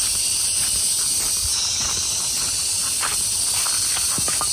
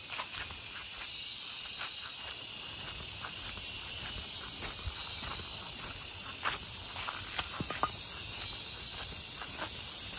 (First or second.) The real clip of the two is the first